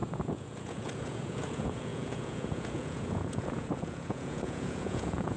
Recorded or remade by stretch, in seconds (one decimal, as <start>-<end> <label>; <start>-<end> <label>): 0.0-5.4 remade